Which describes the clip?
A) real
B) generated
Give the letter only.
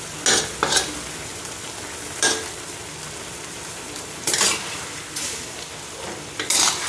A